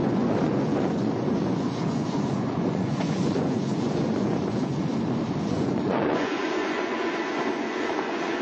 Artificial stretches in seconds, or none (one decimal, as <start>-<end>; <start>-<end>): 0.0-4.9; 5.4-8.4